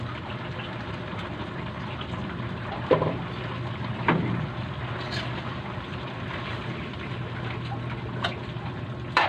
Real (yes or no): yes